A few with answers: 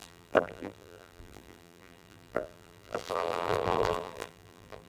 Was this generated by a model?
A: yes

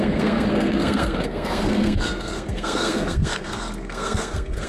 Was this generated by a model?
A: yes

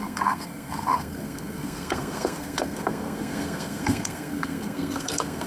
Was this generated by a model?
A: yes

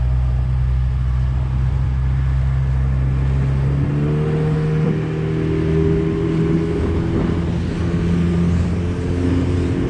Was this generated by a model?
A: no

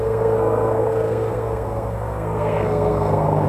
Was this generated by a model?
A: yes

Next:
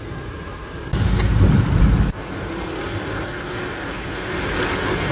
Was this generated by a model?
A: no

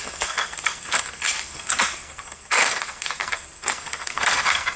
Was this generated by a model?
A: yes